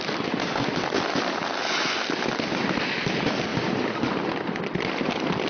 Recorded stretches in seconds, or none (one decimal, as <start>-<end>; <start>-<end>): 1.6-2.7